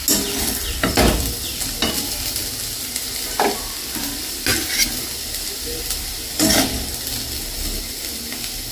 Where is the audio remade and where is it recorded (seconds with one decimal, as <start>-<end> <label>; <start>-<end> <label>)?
0.0-8.7 recorded